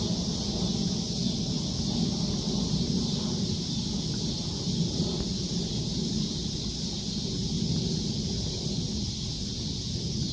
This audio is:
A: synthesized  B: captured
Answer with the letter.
B